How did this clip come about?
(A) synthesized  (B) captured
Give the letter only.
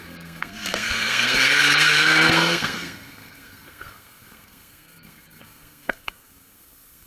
A